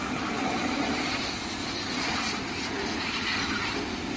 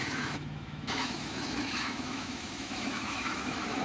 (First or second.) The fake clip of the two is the second